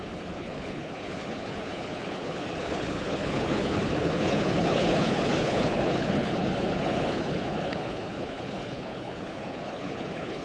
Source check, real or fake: fake